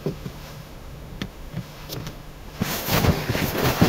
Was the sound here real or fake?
fake